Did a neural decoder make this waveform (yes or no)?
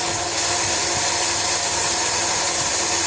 no